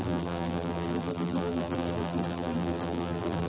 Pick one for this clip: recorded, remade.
remade